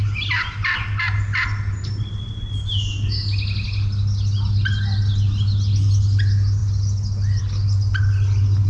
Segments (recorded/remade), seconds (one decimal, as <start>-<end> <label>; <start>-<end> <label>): 0.0-8.7 recorded